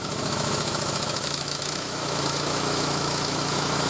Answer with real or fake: fake